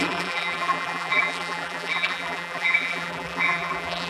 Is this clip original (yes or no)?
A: no